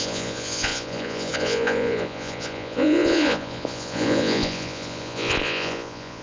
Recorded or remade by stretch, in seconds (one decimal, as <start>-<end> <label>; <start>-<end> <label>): 0.0-6.2 remade